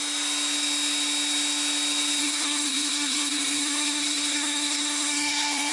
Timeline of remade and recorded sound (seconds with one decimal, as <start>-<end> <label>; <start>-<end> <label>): 0.0-2.2 recorded; 2.2-5.7 remade